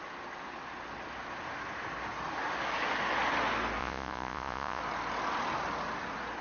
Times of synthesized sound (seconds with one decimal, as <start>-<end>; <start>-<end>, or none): 3.8-4.8